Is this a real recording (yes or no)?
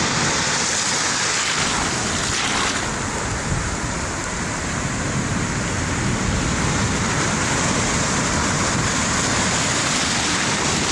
yes